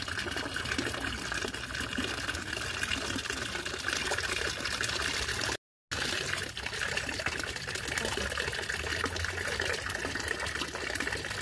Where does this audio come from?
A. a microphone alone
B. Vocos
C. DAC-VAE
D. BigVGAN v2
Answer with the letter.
A